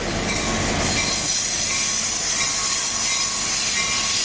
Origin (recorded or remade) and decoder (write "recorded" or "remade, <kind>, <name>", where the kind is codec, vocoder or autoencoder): recorded